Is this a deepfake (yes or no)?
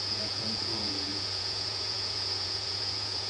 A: yes